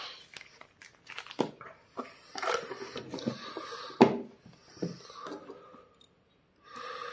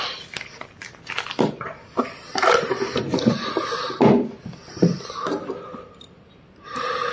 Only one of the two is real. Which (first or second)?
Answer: first